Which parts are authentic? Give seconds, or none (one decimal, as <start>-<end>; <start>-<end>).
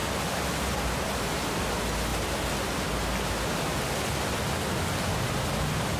0.0-6.0